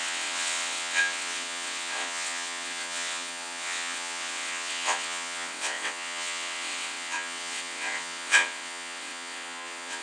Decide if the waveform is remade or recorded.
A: remade